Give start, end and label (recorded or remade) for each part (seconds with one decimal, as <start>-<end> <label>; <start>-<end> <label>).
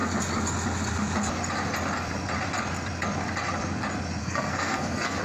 0.0-4.2 recorded; 4.2-5.2 remade